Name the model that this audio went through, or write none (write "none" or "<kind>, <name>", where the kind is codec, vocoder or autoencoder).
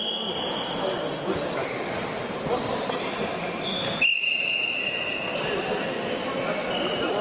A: none